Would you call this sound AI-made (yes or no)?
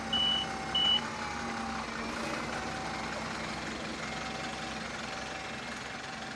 no